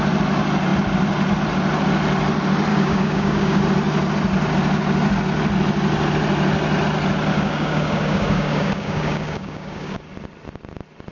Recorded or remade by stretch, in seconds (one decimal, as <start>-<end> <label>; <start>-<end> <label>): 0.0-2.7 recorded; 2.7-3.6 remade; 3.6-7.3 recorded; 7.3-10.0 remade; 10.0-11.1 recorded